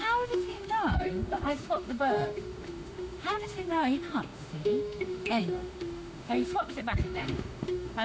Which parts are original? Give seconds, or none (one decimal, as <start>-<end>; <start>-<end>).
none